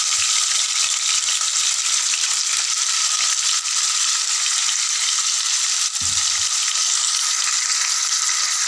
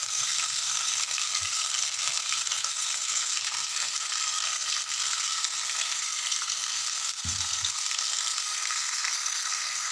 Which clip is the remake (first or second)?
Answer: second